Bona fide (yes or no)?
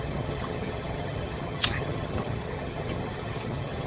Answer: no